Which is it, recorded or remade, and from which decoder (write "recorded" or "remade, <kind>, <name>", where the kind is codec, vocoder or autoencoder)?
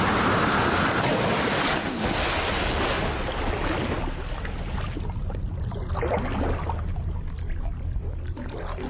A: recorded